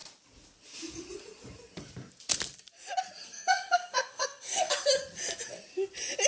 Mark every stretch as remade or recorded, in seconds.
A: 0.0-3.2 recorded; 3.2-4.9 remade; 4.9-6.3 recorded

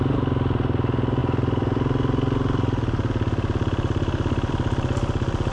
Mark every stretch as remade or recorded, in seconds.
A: 0.0-5.5 recorded

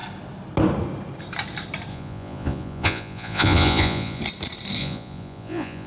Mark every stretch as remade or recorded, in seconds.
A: 0.0-1.9 recorded; 1.9-4.2 remade; 4.2-4.8 recorded; 4.8-5.9 remade